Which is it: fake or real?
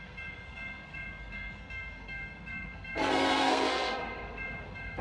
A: fake